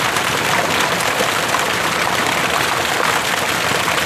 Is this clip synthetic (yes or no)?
no